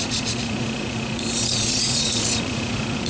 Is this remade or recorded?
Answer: remade